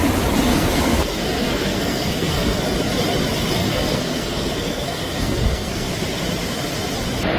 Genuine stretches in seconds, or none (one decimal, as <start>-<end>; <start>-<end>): 0.0-0.5; 2.6-3.6; 5.9-7.4